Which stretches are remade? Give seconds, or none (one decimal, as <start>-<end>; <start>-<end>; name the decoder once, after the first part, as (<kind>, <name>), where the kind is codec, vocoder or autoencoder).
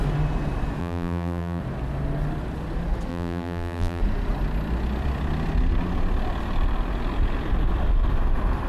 0.8-1.6 (vocoder, BigVGAN v2); 3.1-4.0